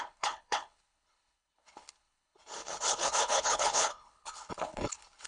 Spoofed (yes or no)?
yes